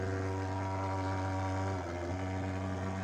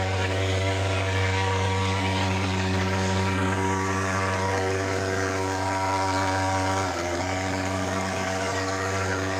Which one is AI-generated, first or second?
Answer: second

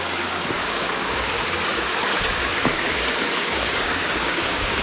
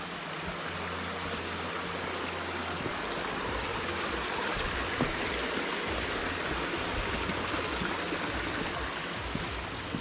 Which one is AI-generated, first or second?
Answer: first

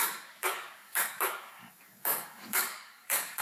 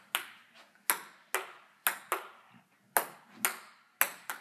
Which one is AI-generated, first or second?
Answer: first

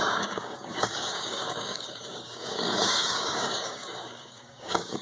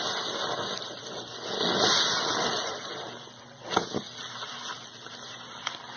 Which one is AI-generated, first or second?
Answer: first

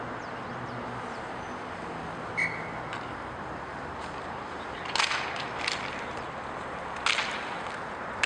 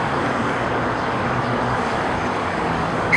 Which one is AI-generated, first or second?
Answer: second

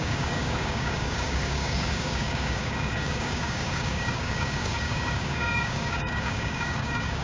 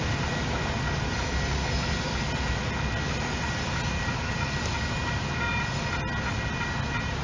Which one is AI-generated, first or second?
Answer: first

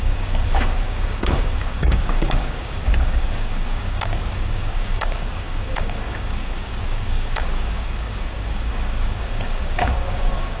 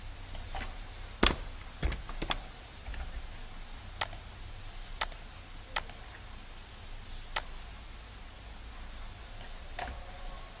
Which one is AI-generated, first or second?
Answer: first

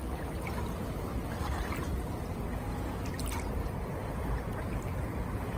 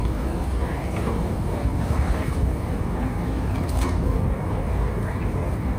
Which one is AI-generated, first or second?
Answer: second